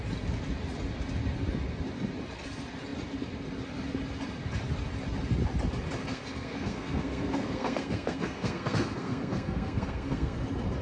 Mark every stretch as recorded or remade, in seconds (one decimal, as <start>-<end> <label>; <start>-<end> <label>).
0.0-6.0 recorded; 6.0-10.4 remade; 10.4-10.8 recorded